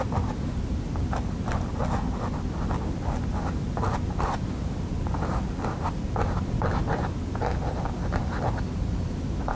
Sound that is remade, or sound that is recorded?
recorded